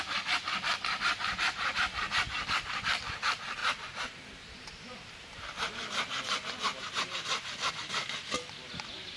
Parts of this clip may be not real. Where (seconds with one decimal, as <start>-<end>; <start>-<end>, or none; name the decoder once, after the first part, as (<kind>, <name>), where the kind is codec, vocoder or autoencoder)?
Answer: 1.2-1.8 (vocoder, BigVGAN v2); 3.6-7.7